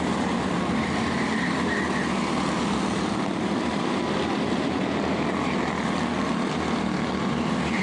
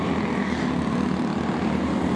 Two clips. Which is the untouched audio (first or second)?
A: second